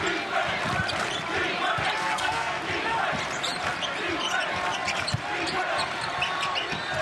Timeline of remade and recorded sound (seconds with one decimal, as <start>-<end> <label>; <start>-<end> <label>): 0.0-2.0 recorded; 2.0-2.6 remade; 2.6-7.0 recorded